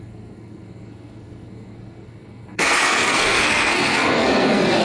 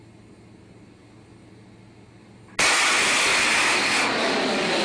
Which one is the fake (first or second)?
first